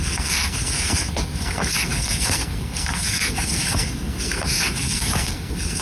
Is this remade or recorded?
remade